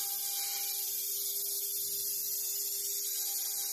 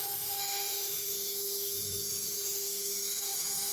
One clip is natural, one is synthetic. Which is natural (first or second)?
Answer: first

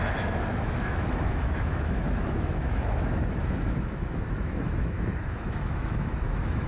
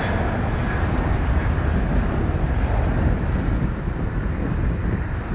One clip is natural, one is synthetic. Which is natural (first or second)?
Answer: second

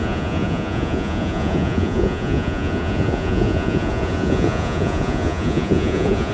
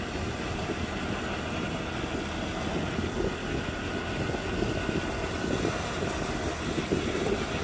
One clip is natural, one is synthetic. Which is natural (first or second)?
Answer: second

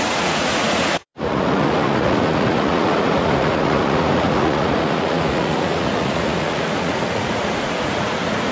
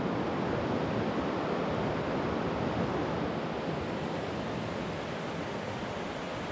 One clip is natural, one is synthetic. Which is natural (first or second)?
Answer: second